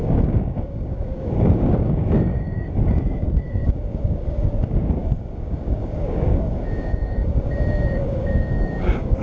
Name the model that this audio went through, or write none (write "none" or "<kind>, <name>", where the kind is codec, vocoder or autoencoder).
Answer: codec, DAC